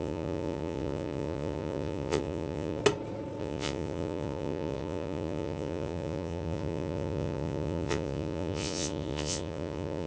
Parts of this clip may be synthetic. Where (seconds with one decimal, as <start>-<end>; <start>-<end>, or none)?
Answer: 0.0-2.8; 3.4-10.1